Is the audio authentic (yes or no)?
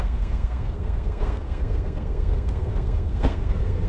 no